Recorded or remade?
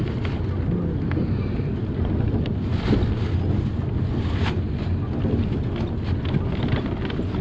recorded